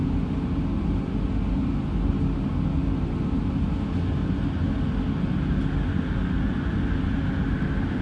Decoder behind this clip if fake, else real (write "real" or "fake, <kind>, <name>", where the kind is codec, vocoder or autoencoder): real